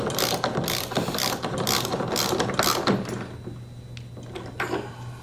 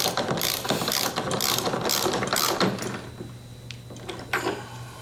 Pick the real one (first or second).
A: first